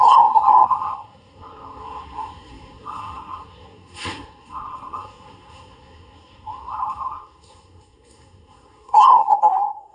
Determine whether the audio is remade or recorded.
remade